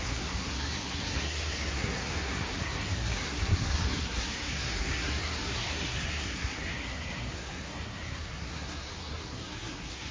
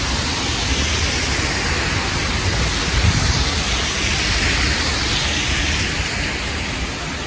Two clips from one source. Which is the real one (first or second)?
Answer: second